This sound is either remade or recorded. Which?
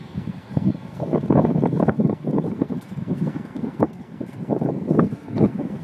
remade